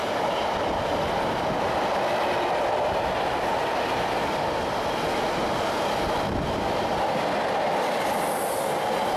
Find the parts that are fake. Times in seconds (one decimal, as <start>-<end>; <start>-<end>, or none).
none